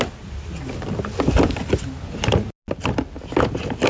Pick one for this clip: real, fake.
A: real